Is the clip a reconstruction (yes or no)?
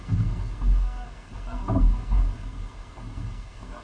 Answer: yes